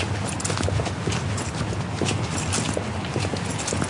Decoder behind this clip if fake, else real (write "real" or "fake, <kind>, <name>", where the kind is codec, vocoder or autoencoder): real